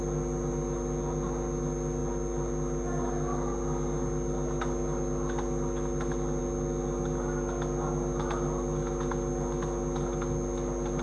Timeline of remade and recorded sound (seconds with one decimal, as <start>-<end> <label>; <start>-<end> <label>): 0.0-11.0 recorded

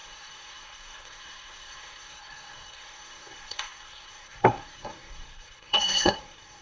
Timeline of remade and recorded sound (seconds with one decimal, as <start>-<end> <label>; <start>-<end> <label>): 0.0-6.6 remade

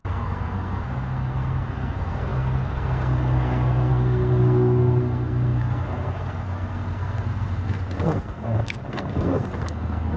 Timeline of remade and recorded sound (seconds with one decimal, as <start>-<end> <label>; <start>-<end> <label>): 0.0-10.2 remade

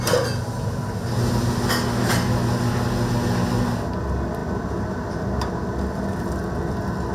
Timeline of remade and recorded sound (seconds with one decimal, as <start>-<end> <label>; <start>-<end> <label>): 0.0-7.1 recorded

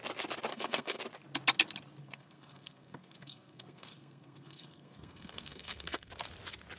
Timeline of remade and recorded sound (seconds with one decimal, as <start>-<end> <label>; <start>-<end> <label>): 0.0-0.5 recorded; 0.5-1.0 remade; 1.0-2.0 recorded; 2.0-6.1 remade; 6.1-6.8 recorded

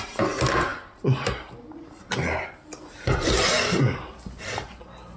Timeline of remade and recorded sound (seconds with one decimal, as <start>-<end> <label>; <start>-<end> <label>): 0.0-5.2 recorded

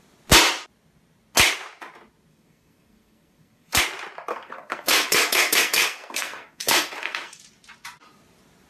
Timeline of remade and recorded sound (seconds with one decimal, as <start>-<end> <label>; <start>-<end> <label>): 0.0-2.3 recorded; 2.3-3.8 remade; 3.8-4.3 recorded; 4.3-7.4 remade; 7.4-8.7 recorded

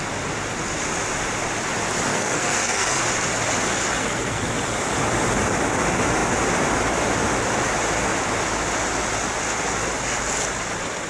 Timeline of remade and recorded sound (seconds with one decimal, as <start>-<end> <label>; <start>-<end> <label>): 0.0-2.1 recorded; 2.1-3.0 remade; 3.0-4.0 recorded; 4.0-4.5 remade; 4.5-11.1 recorded